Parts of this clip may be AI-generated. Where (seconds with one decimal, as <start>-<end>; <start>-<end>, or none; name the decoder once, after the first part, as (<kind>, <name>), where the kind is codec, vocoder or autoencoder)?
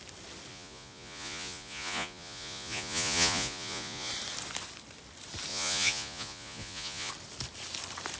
0.5-4.1 (vocoder, Vocos); 5.5-7.1